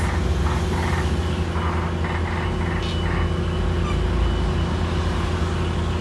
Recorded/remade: recorded